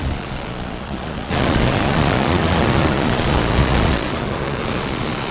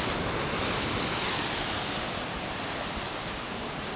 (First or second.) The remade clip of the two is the first